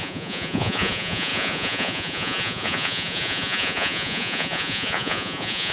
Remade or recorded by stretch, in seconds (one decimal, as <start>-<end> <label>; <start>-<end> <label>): 0.0-5.7 remade